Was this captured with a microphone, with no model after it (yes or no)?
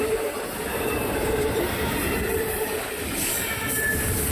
no